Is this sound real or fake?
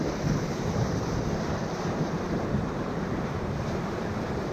fake